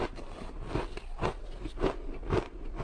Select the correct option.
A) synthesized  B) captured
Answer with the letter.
B